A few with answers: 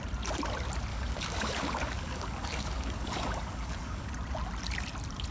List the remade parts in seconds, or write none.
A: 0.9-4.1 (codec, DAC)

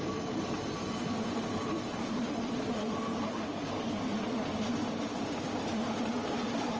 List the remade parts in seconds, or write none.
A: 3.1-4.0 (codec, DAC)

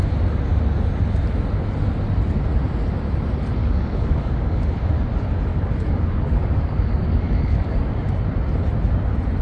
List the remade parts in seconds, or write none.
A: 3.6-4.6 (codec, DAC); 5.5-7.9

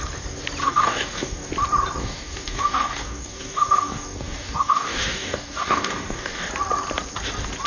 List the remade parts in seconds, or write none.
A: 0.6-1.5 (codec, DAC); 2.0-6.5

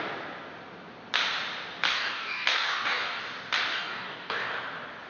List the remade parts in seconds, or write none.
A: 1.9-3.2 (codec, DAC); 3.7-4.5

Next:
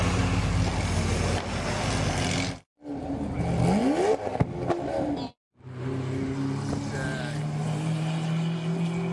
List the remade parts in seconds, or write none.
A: none

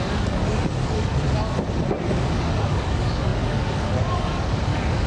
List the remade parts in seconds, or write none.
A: 0.0-1.1 (codec, DAC); 2.0-5.1

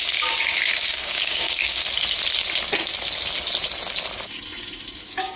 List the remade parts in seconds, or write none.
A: 0.0-1.8 (codec, DAC); 5.0-5.4